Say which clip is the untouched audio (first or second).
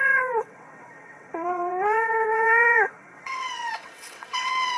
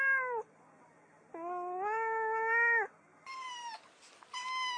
second